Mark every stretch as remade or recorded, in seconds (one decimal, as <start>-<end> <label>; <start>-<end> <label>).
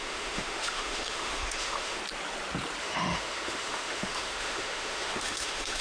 0.0-2.0 remade; 2.0-2.8 recorded; 2.8-5.8 remade